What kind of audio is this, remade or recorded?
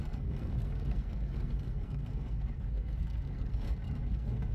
remade